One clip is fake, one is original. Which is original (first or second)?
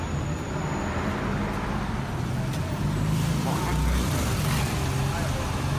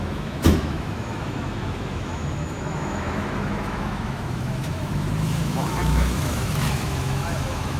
first